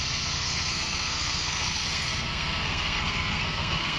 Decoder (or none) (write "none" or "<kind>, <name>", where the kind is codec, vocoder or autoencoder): codec, SNAC